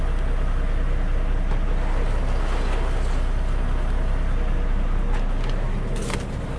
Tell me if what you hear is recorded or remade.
recorded